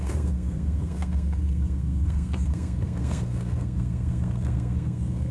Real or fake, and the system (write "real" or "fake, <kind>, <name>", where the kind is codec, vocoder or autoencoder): fake, codec, SNAC